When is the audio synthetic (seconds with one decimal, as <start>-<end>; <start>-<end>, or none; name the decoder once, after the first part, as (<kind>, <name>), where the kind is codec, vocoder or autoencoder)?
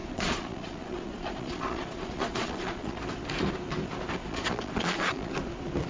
0.0-3.0 (vocoder, Vocos); 4.2-5.3